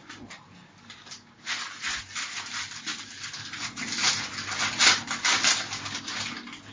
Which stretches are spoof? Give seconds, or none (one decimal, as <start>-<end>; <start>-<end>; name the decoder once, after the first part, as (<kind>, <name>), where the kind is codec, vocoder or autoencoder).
0.0-4.0 (vocoder, BigVGAN v2)